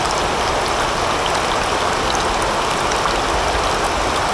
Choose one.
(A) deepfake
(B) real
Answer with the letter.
B